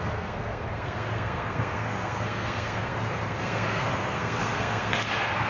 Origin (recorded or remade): remade